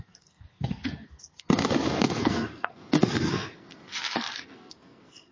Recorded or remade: remade